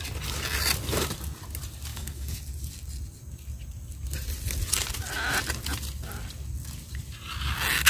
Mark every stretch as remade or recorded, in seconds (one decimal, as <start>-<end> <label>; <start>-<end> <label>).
0.0-1.9 recorded; 1.9-2.4 remade; 2.4-7.9 recorded